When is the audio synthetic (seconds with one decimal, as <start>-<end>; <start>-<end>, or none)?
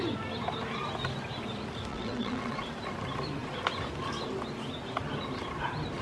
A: 1.9-2.6